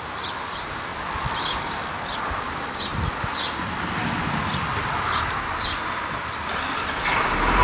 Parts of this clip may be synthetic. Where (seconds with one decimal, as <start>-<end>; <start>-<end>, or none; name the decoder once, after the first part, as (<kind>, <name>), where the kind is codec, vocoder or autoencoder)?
none